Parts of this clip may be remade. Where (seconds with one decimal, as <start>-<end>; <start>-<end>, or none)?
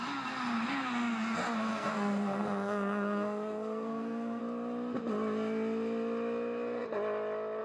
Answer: 1.7-4.4